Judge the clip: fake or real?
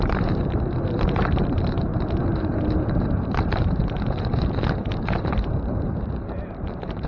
fake